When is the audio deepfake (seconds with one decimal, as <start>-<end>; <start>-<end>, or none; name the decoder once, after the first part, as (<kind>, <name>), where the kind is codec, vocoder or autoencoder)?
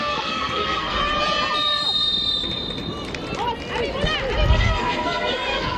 0.0-1.0 (codec, SNAC); 4.5-5.8